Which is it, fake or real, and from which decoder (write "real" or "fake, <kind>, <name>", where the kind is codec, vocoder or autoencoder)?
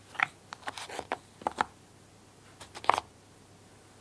real